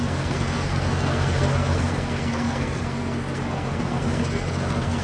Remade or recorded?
remade